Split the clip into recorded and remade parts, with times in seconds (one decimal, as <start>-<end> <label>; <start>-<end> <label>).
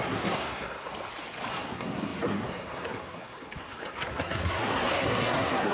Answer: 0.0-0.9 remade; 0.9-1.5 recorded; 1.5-5.7 remade